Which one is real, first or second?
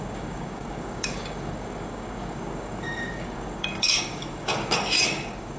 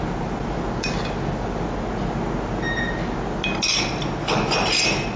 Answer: second